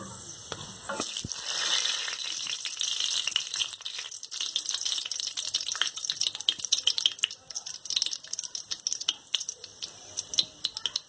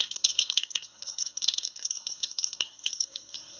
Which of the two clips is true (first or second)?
first